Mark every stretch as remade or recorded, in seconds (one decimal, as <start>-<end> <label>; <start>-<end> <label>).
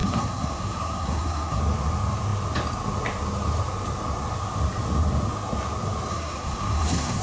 0.0-1.6 remade; 1.6-6.1 recorded; 6.1-7.2 remade